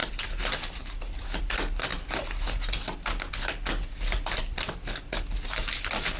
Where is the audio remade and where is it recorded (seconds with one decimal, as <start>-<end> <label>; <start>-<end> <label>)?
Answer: 0.0-6.2 recorded